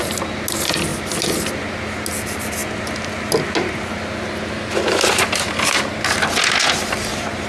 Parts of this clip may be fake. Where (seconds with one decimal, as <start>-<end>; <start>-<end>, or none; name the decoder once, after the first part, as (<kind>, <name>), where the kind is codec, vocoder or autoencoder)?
none